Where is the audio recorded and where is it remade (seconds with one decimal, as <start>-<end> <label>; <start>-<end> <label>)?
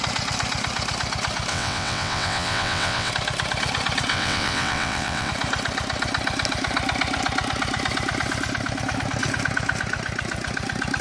0.0-1.5 recorded; 1.5-3.1 remade; 3.1-4.1 recorded; 4.1-5.3 remade; 5.3-11.0 recorded